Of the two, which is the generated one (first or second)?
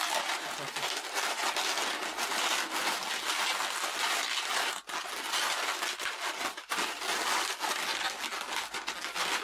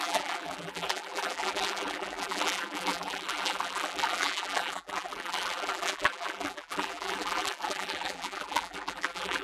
second